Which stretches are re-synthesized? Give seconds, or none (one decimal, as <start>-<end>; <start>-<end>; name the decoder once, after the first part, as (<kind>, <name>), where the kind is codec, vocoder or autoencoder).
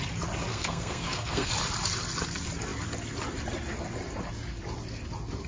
0.5-1.5 (codec, SNAC)